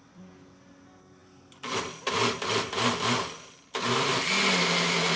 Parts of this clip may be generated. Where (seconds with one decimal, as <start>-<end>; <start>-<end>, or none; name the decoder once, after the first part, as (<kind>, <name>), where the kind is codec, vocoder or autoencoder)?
none